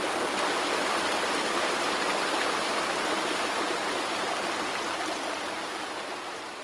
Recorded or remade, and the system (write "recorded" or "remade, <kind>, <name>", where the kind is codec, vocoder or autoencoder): recorded